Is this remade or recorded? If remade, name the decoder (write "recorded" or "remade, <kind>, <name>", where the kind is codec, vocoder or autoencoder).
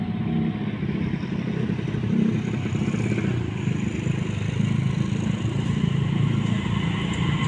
recorded